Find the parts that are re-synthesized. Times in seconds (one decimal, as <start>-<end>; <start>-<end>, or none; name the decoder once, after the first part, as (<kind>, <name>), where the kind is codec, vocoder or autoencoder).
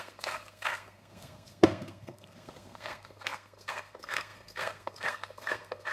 0.0-5.9 (codec, SNAC)